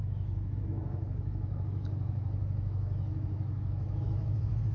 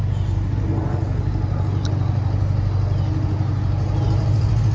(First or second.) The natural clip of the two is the second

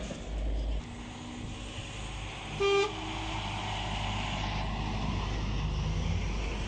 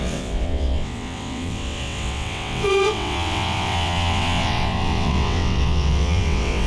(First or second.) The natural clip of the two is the first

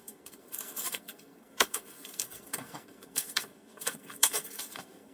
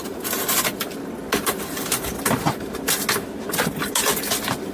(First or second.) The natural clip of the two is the second